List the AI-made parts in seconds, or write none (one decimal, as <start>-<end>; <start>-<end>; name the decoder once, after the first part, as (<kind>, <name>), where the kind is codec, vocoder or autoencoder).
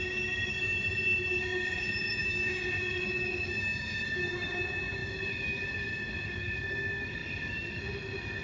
0.0-8.4 (autoencoder, DAC-VAE)